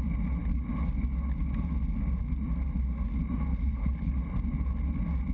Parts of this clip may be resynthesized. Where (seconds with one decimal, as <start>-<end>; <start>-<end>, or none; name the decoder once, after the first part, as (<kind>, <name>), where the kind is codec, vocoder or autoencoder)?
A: 3.5-4.1 (codec, HILCodec)